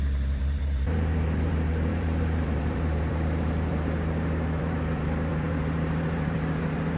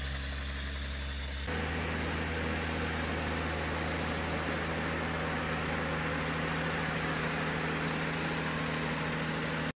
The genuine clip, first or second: second